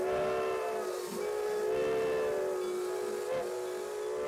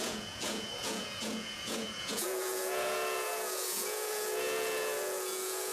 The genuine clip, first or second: first